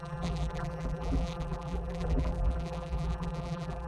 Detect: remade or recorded remade